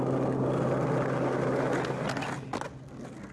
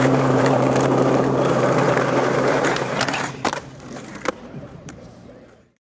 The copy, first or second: second